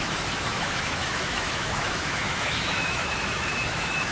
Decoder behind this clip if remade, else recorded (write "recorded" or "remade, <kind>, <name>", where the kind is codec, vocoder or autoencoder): remade, autoencoder, DAC-VAE